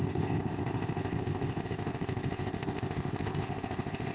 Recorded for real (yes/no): no